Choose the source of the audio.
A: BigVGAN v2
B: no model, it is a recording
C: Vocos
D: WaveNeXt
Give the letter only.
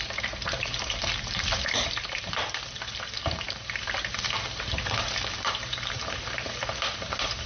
A